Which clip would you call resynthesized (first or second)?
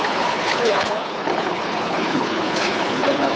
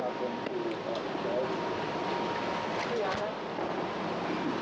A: first